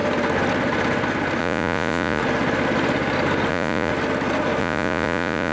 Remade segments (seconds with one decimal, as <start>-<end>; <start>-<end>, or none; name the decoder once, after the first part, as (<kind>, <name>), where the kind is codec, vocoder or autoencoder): 1.4-2.2 (vocoder, Vocos); 3.5-3.9; 4.6-5.5